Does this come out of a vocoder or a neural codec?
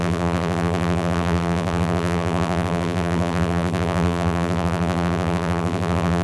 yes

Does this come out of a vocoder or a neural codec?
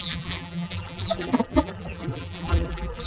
yes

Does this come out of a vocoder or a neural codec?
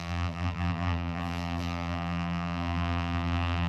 yes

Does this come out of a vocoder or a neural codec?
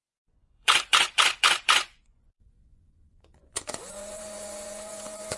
yes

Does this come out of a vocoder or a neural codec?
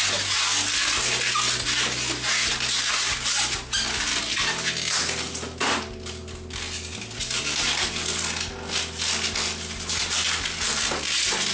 no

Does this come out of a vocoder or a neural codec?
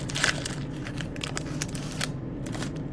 no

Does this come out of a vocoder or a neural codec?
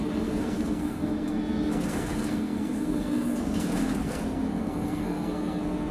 yes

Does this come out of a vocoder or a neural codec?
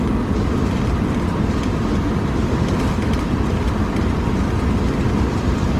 no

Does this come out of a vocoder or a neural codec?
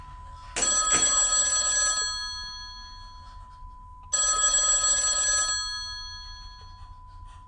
no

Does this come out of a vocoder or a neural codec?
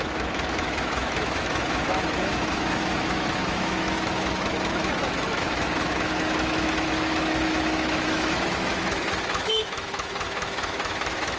yes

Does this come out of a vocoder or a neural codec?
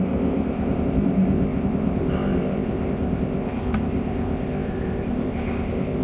yes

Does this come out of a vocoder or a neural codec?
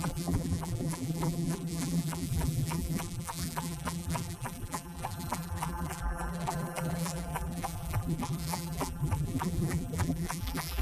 yes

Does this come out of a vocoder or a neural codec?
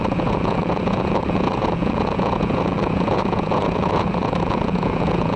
yes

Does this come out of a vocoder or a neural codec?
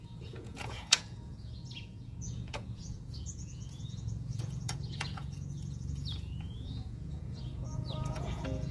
yes